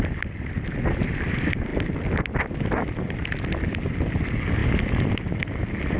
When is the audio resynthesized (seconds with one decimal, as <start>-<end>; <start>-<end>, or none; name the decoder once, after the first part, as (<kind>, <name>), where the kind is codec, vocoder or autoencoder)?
1.7-3.8 (vocoder, BigVGAN v2)